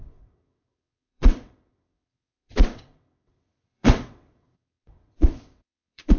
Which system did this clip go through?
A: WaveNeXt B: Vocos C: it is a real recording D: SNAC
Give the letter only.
A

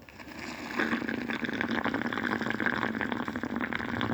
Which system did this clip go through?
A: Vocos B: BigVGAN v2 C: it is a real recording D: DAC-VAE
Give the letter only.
C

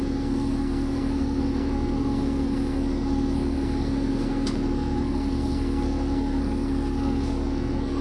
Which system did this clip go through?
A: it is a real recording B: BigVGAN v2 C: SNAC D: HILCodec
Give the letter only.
C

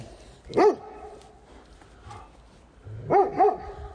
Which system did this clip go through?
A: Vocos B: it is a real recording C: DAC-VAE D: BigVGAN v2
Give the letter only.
B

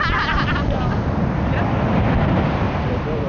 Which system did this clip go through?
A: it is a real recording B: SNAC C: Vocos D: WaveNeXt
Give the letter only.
A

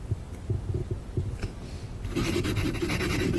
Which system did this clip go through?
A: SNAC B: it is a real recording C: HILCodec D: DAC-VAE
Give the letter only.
B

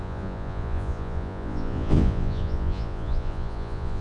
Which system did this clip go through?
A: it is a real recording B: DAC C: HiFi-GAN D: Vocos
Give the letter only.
D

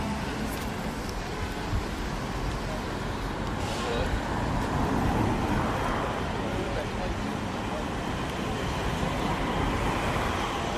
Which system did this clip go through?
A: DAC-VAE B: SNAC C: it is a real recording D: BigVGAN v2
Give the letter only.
D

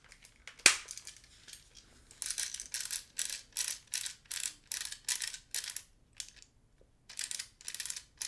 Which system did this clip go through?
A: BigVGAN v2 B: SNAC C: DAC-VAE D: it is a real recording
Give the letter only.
D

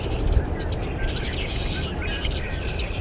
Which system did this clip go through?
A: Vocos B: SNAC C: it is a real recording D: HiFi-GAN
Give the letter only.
C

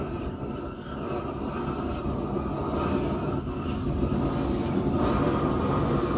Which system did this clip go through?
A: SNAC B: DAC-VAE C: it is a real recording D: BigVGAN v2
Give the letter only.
C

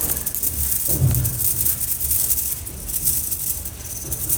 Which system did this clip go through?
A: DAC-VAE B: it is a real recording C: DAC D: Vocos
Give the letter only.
B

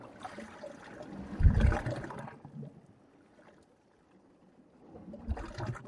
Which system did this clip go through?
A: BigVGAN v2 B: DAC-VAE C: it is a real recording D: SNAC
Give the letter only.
C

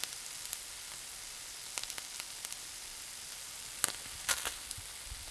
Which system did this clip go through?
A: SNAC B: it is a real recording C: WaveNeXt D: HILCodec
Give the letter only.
B